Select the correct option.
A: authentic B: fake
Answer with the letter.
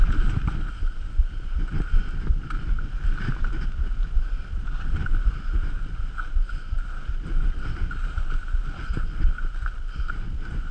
A